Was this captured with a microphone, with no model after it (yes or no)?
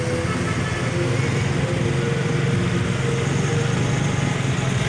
yes